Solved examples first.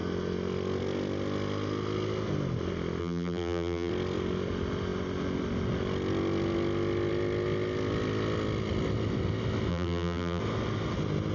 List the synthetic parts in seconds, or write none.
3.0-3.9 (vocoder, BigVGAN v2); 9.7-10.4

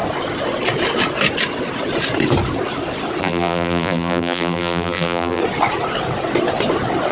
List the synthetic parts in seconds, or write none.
3.2-5.4 (vocoder, BigVGAN v2)

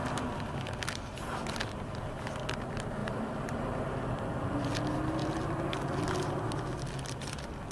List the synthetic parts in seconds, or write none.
3.0-4.8 (vocoder, BigVGAN v2); 5.2-6.3

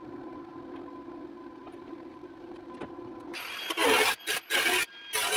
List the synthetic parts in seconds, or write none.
1.6-2.9 (vocoder, BigVGAN v2); 3.3-4.1

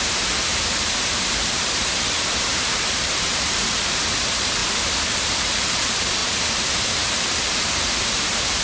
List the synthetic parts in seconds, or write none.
0.0-4.6 (vocoder, BigVGAN v2); 5.1-8.6

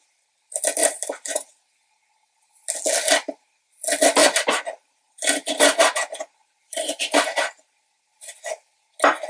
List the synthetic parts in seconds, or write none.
0.8-1.5 (vocoder, BigVGAN v2); 4.2-7.7

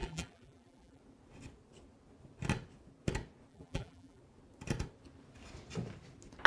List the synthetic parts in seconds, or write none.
0.0-1.0 (vocoder, BigVGAN v2); 3.5-4.2

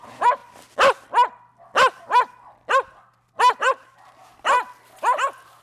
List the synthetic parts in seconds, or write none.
0.0-0.4 (vocoder, BigVGAN v2); 3.4-4.2